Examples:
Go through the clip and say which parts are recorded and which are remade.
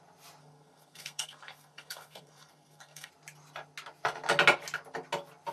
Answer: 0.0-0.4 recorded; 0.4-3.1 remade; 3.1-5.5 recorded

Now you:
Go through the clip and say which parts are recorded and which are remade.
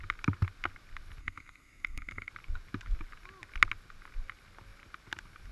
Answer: 0.0-1.2 recorded; 1.2-2.3 remade; 2.3-5.5 recorded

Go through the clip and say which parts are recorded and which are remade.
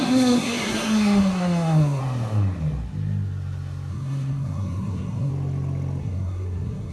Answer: 0.0-2.0 remade; 2.0-3.9 recorded; 3.9-5.3 remade; 5.3-6.0 recorded; 6.0-6.9 remade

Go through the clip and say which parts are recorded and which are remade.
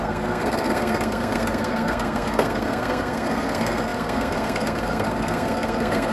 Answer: 0.0-6.1 remade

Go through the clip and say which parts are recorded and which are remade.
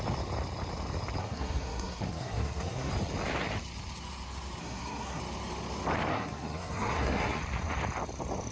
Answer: 0.0-1.2 recorded; 1.2-2.9 remade; 2.9-4.6 recorded; 4.6-5.2 remade; 5.2-6.1 recorded; 6.1-7.4 remade; 7.4-8.5 recorded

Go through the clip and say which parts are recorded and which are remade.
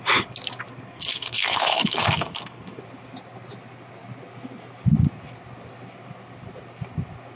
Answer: 0.0-0.7 recorded; 0.7-2.8 remade; 2.8-7.4 recorded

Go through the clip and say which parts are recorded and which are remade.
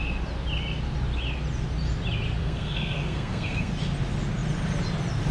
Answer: 0.0-2.4 recorded; 2.4-3.7 remade; 3.7-5.3 recorded